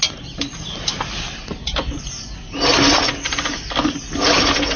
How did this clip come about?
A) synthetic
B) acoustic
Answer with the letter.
B